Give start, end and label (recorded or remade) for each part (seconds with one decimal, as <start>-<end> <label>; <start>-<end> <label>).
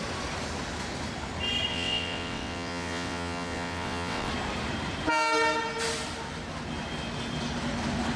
0.0-1.7 recorded; 1.7-4.3 remade; 4.3-8.2 recorded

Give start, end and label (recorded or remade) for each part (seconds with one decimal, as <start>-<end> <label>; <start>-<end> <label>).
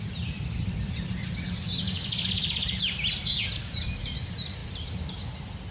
0.0-5.7 recorded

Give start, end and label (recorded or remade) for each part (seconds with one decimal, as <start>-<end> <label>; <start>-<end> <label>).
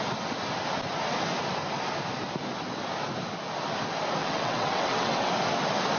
0.0-4.2 recorded; 4.2-5.3 remade; 5.3-6.0 recorded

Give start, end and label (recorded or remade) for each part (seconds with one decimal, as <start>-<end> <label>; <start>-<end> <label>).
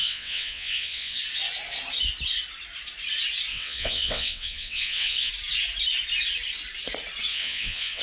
0.0-1.2 remade; 1.2-3.5 recorded; 3.5-5.3 remade; 5.3-7.3 recorded; 7.3-8.0 remade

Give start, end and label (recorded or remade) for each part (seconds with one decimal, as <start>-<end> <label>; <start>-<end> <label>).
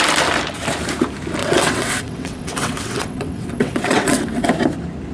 0.0-1.4 recorded; 1.4-4.5 remade; 4.5-5.1 recorded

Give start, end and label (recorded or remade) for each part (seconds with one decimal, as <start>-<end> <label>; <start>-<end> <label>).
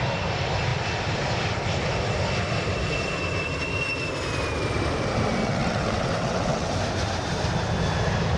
0.0-5.4 recorded; 5.4-6.7 remade; 6.7-8.4 recorded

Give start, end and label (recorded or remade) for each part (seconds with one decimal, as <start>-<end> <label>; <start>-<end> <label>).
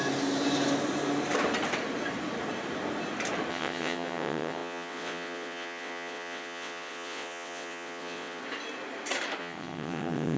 0.0-3.5 recorded; 3.5-8.4 remade; 8.4-9.4 recorded; 9.4-10.4 remade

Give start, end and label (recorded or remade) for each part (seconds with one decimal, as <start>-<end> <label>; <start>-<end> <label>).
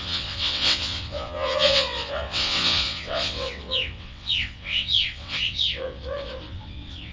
0.0-7.1 remade